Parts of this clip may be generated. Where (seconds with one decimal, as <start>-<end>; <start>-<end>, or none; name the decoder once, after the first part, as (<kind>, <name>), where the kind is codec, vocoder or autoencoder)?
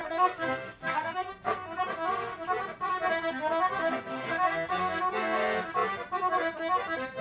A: 0.0-1.8 (codec, SNAC); 3.8-4.7